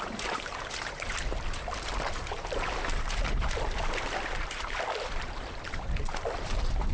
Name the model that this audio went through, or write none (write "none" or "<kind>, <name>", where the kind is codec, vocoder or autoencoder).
vocoder, BigVGAN v2